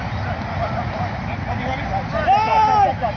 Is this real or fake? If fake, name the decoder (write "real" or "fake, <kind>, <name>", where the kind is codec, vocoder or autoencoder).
real